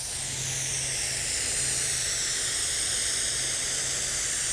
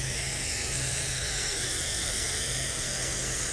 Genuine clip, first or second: first